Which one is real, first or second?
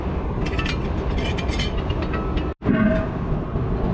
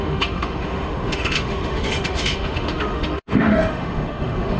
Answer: first